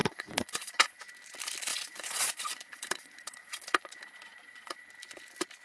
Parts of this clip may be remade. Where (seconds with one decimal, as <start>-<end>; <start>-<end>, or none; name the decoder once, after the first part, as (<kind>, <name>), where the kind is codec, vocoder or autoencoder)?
0.0-1.0 (vocoder, Vocos); 1.7-4.9